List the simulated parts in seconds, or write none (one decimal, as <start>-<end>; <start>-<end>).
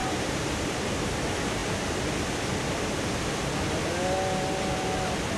0.0-1.2